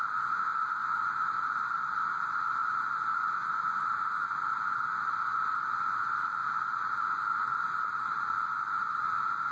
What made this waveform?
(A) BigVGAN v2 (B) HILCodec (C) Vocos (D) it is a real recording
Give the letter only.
C